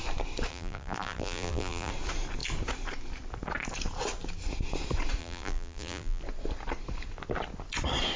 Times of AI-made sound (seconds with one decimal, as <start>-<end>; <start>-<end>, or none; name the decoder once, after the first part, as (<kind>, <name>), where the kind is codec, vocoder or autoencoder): 0.5-1.9 (vocoder, BigVGAN v2); 5.2-6.2